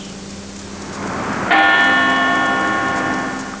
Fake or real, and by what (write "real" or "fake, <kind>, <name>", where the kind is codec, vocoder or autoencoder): real